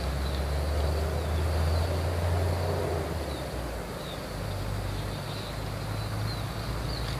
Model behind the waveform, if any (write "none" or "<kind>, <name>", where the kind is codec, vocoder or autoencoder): none